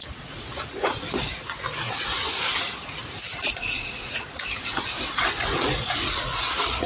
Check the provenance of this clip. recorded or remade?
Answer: remade